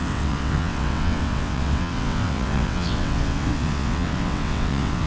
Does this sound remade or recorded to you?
remade